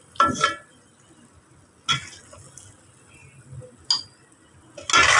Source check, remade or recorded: recorded